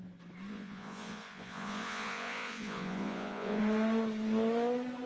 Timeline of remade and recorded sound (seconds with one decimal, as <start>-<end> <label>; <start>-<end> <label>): 0.0-0.5 recorded; 0.5-3.6 remade; 3.6-5.1 recorded